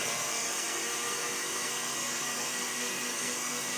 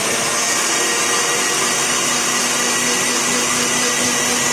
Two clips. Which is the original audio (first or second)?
second